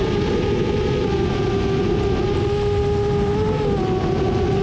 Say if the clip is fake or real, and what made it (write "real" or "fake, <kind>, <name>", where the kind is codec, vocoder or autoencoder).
real